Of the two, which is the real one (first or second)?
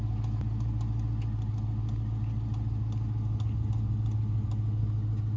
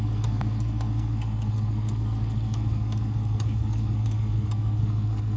first